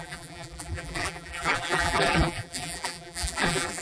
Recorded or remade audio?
remade